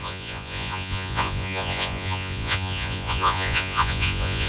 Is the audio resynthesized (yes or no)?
yes